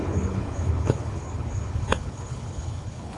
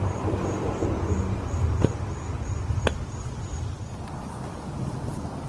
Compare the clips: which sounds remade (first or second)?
first